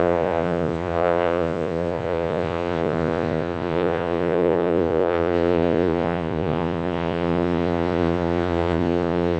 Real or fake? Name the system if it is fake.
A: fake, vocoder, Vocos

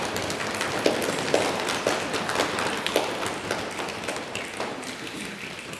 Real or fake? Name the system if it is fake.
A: real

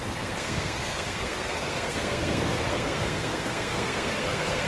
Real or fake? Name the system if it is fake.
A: fake, codec, SNAC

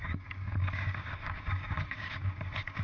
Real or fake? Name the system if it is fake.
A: fake, codec, DAC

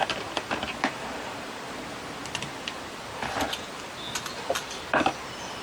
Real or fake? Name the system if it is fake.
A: fake, vocoder, BigVGAN v2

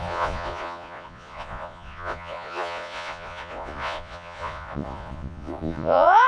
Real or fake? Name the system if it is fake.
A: fake, vocoder, Vocos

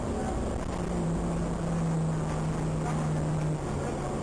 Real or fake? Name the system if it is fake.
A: real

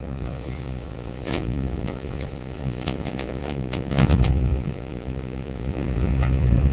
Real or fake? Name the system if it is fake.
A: fake, vocoder, Vocos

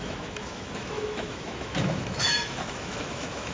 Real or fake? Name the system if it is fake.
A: fake, autoencoder, DAC-VAE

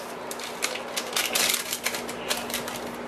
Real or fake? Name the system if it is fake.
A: real